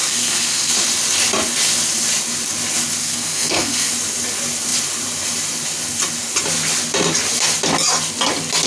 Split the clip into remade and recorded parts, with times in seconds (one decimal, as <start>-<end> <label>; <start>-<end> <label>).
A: 0.0-0.7 remade; 0.7-3.0 recorded; 3.0-3.9 remade; 3.9-8.7 recorded